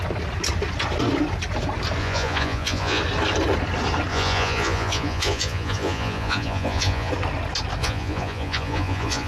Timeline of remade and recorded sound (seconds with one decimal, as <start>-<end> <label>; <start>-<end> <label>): 0.0-2.0 recorded; 2.0-3.0 remade; 3.0-4.1 recorded; 4.1-7.1 remade; 7.1-7.8 recorded; 7.8-9.3 remade